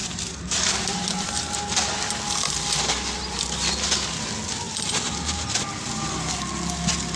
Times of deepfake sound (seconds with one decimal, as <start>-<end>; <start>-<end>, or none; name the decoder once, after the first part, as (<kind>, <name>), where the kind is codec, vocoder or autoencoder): 0.0-3.2 (vocoder, BigVGAN v2)